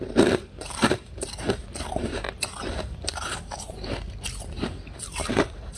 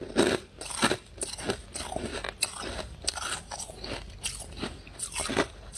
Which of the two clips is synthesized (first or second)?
first